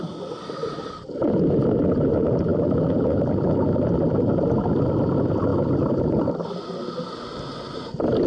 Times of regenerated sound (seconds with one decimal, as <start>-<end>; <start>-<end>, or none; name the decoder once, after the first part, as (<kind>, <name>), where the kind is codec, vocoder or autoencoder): none